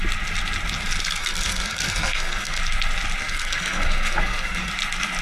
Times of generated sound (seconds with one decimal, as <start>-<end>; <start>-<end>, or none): 1.2-2.6; 3.2-4.7